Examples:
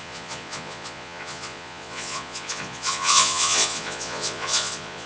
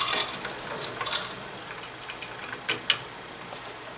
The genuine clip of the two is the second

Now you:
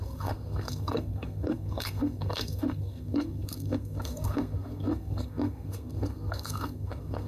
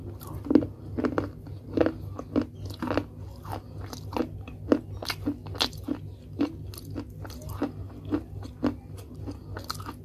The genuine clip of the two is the second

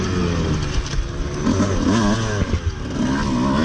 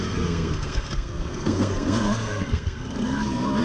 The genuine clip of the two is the first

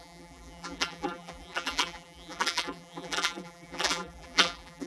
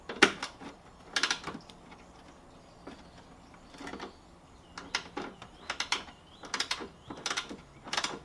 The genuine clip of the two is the second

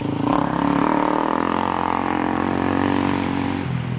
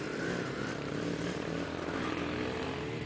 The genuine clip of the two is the first